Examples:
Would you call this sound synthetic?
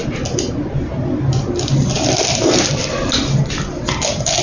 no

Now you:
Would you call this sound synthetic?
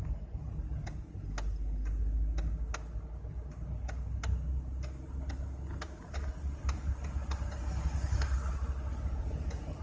no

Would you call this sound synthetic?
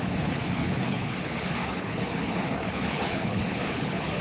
yes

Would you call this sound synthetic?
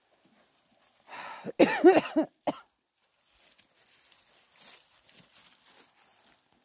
no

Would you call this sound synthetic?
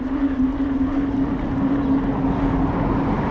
no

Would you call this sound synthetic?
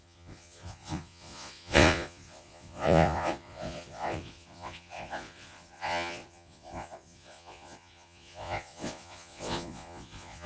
yes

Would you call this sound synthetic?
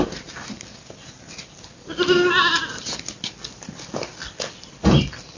no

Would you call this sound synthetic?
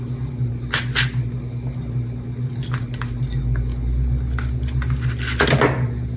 no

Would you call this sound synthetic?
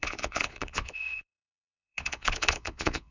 yes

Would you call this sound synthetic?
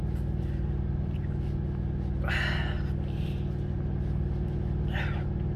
no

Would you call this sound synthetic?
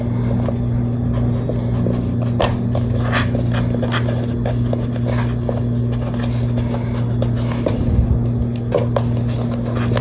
no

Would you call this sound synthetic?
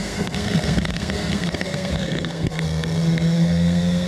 yes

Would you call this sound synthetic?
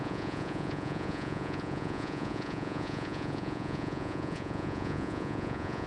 yes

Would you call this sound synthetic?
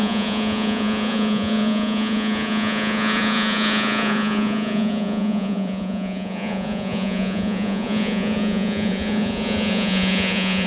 yes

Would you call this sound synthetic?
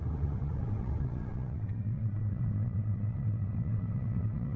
yes